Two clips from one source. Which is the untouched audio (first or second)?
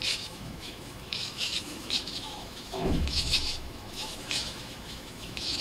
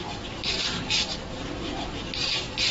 second